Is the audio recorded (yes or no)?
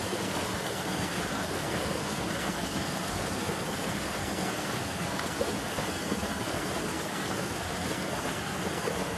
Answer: no